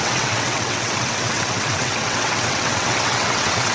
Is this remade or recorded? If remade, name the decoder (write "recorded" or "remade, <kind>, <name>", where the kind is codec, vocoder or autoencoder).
remade, vocoder, WaveNeXt